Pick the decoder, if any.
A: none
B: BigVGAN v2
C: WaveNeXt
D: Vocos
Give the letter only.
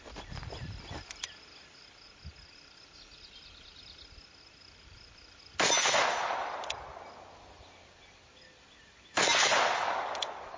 A